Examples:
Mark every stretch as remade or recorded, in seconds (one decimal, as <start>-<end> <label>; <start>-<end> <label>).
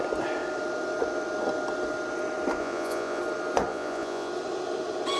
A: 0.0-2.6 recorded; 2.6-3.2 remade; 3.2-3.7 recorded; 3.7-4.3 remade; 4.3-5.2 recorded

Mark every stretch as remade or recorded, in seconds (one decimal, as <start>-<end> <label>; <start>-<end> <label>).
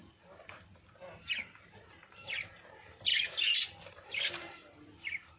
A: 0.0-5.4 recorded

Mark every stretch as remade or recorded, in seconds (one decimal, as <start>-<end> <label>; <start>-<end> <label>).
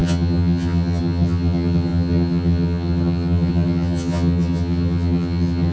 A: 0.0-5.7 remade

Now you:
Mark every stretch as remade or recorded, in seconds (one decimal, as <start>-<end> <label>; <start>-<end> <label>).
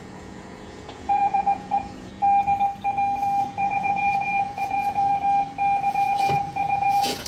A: 0.0-2.1 remade; 2.1-3.4 recorded; 3.4-5.1 remade; 5.1-5.9 recorded; 5.9-7.3 remade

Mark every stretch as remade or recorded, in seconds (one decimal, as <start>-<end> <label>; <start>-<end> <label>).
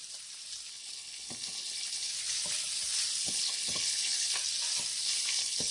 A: 0.0-0.7 recorded; 0.7-2.1 remade; 2.1-3.2 recorded; 3.2-4.4 remade; 4.4-5.0 recorded; 5.0-5.7 remade